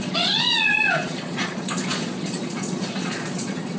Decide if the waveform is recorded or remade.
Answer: remade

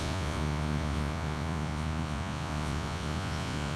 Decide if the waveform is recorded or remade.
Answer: remade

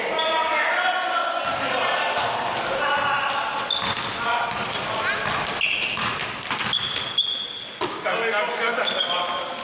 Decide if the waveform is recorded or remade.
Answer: recorded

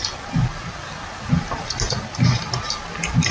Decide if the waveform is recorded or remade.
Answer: recorded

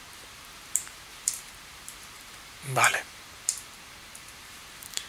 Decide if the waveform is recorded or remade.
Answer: remade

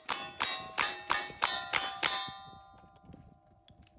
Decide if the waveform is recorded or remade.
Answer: recorded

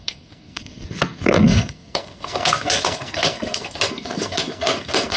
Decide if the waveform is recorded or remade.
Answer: remade